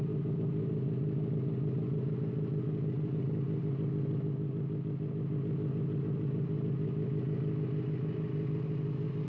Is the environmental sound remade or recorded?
recorded